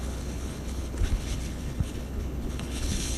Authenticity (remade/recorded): remade